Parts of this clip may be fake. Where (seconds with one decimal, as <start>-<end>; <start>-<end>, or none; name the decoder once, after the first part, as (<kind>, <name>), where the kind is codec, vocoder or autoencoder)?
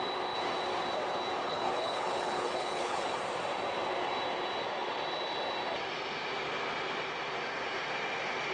1.4-3.2 (codec, HILCodec)